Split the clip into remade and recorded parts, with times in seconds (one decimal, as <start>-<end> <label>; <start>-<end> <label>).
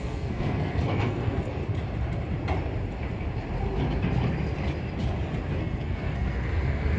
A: 0.0-1.6 remade; 1.6-5.5 recorded; 5.5-7.0 remade